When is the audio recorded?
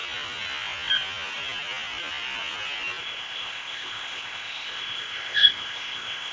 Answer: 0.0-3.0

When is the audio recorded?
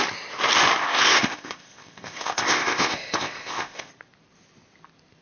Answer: 0.0-0.8; 3.9-5.2